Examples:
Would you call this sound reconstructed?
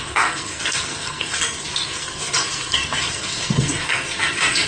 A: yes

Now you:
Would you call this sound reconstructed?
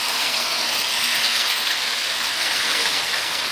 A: yes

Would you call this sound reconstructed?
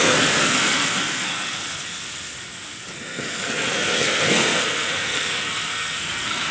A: yes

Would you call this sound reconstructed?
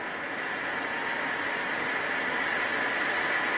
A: no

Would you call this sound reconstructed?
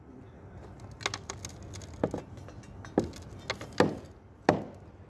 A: no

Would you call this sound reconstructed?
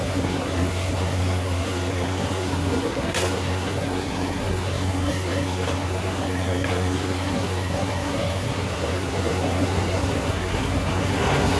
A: yes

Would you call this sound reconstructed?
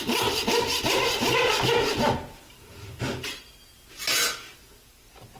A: no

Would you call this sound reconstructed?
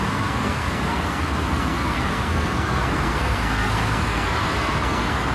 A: yes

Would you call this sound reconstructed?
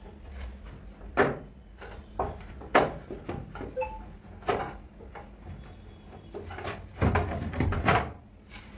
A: no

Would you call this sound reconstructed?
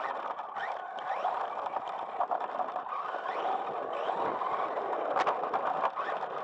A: no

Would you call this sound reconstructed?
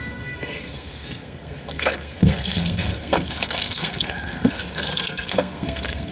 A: yes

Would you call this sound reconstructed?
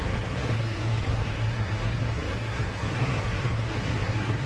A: yes